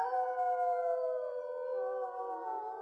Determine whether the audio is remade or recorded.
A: recorded